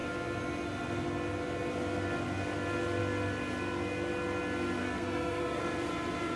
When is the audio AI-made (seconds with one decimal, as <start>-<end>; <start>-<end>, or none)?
4.8-5.6